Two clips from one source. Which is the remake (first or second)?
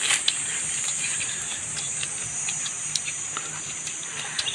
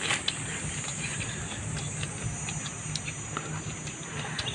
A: first